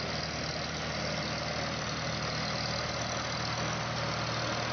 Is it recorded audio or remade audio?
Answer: recorded